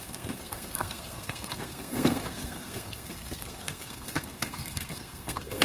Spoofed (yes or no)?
yes